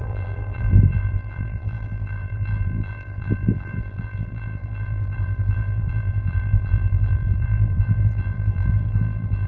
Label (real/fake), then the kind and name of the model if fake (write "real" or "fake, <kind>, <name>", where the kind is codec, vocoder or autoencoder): fake, vocoder, BigVGAN v2